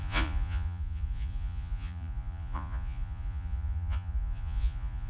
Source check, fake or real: fake